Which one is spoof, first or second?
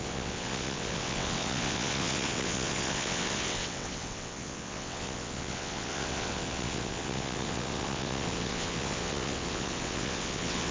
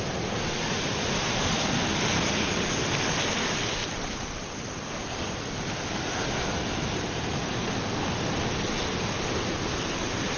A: first